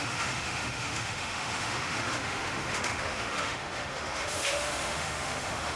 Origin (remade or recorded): remade